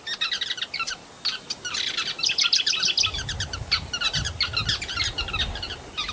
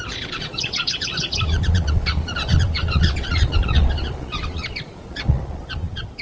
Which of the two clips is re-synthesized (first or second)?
second